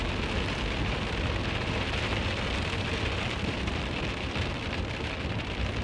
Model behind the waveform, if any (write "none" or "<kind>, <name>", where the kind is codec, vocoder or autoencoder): vocoder, BigVGAN v2